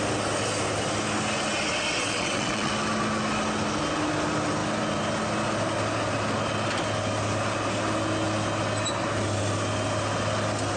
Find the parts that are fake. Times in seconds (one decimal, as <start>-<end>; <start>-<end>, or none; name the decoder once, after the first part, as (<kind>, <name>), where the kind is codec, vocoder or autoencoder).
2.0-2.7 (vocoder, WaveNeXt)